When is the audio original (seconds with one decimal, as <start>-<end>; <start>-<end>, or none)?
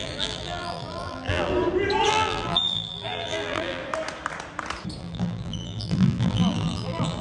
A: 1.5-2.1; 3.8-5.0